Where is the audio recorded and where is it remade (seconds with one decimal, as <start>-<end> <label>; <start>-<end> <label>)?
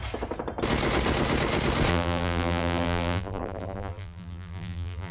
0.0-1.9 recorded; 1.9-5.1 remade